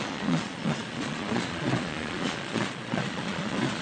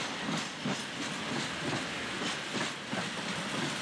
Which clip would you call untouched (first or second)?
second